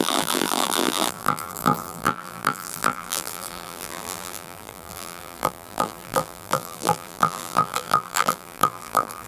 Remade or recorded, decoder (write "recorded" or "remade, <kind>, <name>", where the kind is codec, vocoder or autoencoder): remade, vocoder, BigVGAN v2